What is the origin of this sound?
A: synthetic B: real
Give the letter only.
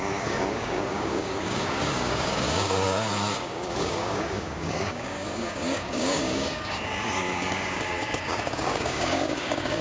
A